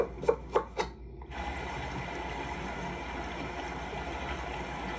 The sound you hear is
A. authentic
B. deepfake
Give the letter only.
A